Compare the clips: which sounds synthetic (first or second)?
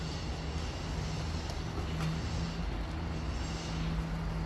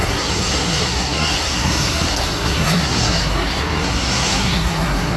second